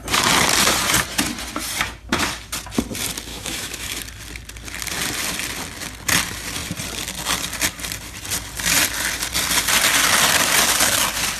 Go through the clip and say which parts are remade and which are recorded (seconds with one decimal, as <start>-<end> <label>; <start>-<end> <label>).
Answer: 0.0-3.3 recorded; 3.3-4.0 remade; 4.0-11.4 recorded

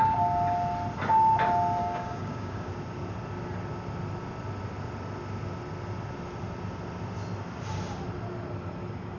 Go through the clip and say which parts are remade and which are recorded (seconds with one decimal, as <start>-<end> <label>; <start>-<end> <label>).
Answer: 0.0-1.8 recorded; 1.8-2.7 remade; 2.7-9.2 recorded

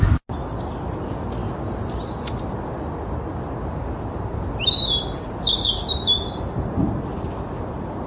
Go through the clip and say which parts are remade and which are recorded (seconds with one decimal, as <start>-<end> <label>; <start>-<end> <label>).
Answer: 0.0-8.1 recorded

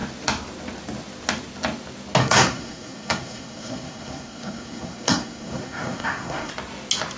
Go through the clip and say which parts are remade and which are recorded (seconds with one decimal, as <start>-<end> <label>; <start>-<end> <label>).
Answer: 0.0-2.2 recorded; 2.2-6.5 remade; 6.5-7.2 recorded

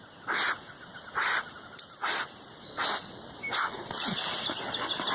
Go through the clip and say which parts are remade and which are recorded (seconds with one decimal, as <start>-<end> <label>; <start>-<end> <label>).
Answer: 0.0-5.1 recorded

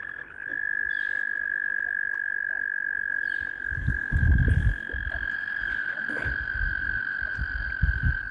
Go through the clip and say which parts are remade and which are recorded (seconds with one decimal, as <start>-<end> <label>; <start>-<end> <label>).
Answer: 0.0-8.3 recorded

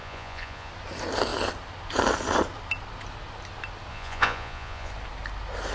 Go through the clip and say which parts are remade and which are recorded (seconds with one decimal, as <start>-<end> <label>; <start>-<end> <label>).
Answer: 0.0-0.7 remade; 0.7-3.9 recorded; 3.9-4.9 remade; 4.9-5.7 recorded

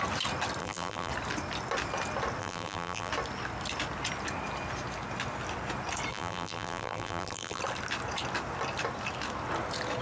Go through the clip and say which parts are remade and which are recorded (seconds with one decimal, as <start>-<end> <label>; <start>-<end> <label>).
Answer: 0.0-0.6 recorded; 0.6-1.1 remade; 1.1-2.4 recorded; 2.4-3.1 remade; 3.1-6.1 recorded; 6.1-7.6 remade; 7.6-10.0 recorded